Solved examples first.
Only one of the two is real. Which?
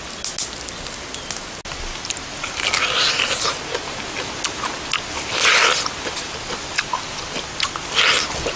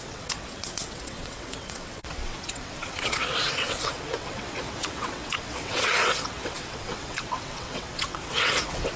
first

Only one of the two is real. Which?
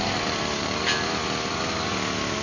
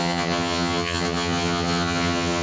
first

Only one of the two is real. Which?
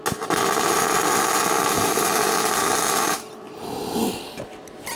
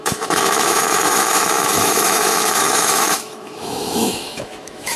first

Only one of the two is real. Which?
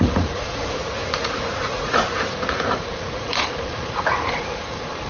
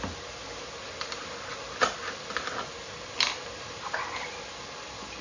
second